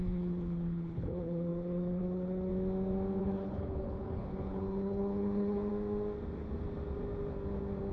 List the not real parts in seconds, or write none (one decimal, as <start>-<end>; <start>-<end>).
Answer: 0.0-2.5; 3.2-5.7